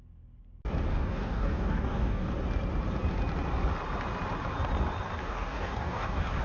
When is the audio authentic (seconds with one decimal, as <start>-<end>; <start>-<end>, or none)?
0.0-0.9; 2.3-5.2